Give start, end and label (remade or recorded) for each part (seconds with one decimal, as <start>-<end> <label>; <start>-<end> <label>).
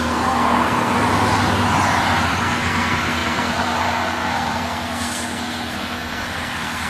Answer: 0.0-1.1 remade; 1.1-2.4 recorded; 2.4-6.9 remade